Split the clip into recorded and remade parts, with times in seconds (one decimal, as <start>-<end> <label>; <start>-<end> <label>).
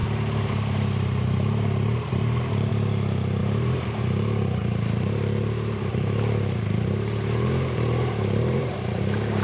0.0-2.7 remade; 2.7-3.4 recorded; 3.4-4.0 remade; 4.0-4.6 recorded; 4.6-9.0 remade; 9.0-9.4 recorded